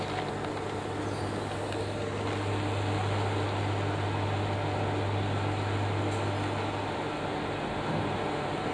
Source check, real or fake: real